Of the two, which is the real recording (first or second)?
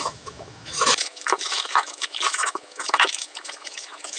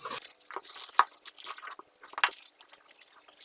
second